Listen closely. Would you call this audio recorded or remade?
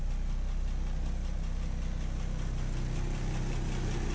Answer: recorded